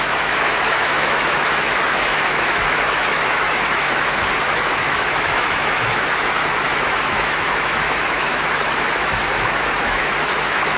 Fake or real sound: fake